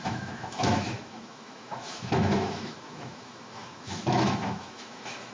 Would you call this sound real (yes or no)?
no